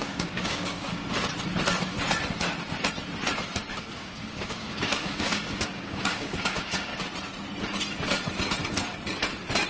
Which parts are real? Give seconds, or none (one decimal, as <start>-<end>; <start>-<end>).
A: 1.0-3.7; 6.9-9.7